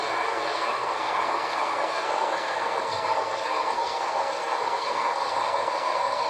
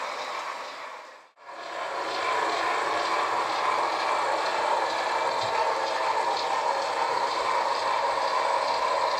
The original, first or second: second